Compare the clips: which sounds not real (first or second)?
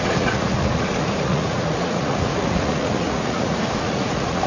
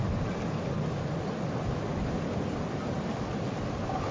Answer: first